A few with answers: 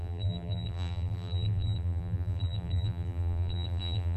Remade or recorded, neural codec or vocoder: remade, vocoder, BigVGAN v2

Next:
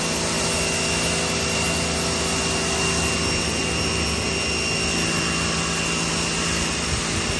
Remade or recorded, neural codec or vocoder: recorded